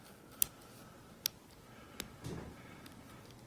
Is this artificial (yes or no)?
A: no